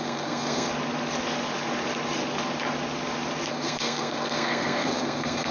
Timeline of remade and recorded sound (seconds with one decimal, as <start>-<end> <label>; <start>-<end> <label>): 0.0-0.7 remade; 0.7-3.5 recorded; 3.5-5.5 remade